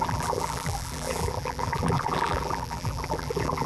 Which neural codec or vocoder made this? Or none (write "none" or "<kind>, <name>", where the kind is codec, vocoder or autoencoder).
vocoder, BigVGAN v2